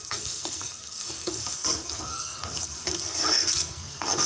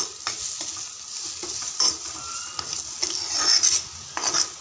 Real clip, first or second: second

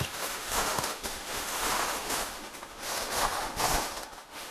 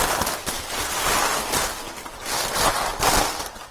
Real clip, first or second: second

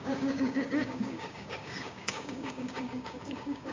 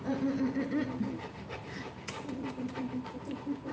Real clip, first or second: second